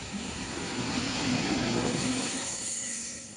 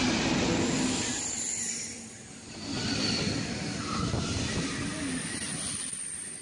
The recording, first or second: second